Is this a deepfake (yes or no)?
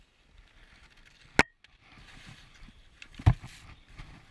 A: no